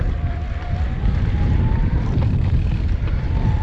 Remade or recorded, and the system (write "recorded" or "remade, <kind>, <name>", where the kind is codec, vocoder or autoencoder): remade, vocoder, BigVGAN v2